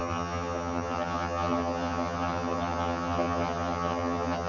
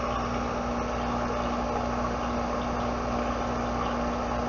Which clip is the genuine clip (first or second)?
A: second